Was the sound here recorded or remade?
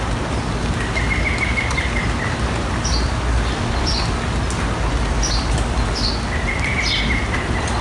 recorded